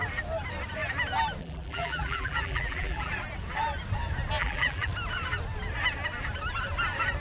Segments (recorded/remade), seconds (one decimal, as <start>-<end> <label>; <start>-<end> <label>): 0.0-1.4 recorded; 1.4-3.1 remade; 3.1-4.4 recorded; 4.4-4.9 remade; 4.9-7.2 recorded

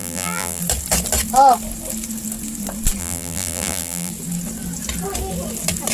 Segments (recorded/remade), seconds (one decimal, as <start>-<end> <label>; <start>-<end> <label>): 0.0-0.6 remade; 0.6-3.0 recorded; 3.0-4.1 remade; 4.1-5.9 recorded

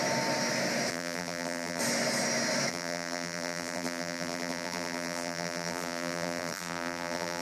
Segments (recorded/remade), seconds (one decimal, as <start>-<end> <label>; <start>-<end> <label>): 0.0-0.9 recorded; 0.9-1.8 remade; 1.8-2.7 recorded; 2.7-7.4 remade